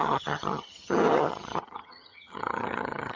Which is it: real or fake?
fake